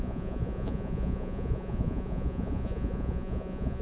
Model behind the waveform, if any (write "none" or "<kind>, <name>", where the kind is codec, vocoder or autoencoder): vocoder, Vocos